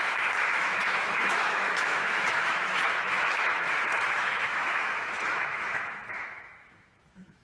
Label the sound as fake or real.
fake